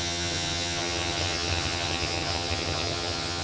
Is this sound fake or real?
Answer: fake